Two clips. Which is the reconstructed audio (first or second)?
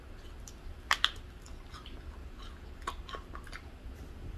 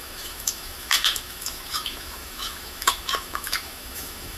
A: second